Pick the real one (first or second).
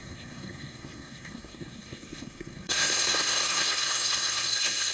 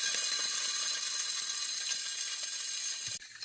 second